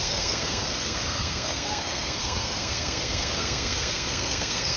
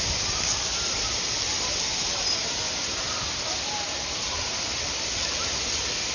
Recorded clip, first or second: second